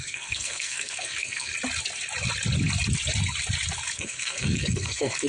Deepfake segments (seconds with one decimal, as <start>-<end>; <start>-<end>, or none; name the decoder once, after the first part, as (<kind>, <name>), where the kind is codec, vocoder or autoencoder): 0.0-1.5 (codec, SNAC); 3.9-5.3